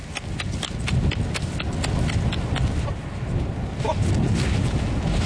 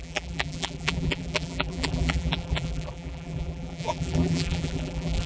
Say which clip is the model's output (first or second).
second